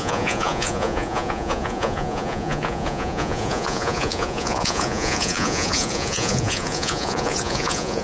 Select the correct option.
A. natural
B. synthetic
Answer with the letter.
B